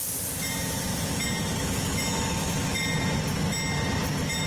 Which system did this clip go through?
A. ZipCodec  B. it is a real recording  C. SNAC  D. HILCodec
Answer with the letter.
B